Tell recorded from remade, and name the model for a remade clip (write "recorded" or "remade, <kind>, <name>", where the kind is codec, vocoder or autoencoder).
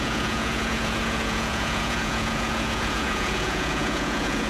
remade, vocoder, Vocos